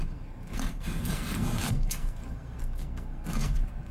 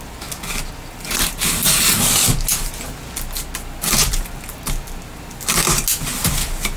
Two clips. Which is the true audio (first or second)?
second